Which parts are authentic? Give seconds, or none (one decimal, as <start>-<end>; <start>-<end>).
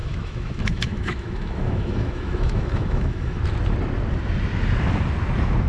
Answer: 3.4-5.7